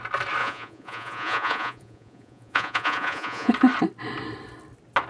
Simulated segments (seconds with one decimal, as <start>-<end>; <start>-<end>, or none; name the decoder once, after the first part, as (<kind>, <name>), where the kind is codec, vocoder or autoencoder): 0.4-3.5 (vocoder, Vocos)

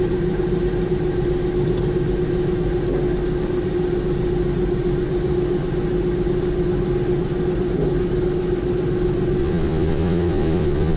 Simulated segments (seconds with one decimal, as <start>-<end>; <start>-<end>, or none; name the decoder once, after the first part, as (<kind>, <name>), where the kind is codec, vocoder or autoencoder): 9.4-11.0 (vocoder, Vocos)

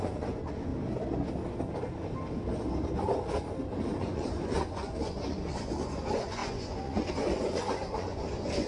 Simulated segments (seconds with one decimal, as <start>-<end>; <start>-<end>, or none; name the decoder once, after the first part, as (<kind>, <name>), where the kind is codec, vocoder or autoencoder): 0.0-0.7 (vocoder, Vocos); 4.0-8.7

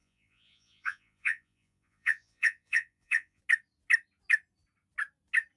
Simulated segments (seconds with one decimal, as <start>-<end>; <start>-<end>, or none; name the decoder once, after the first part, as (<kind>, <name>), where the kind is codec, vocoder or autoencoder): 0.0-3.4 (vocoder, Vocos)